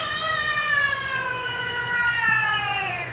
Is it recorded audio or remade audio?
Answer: remade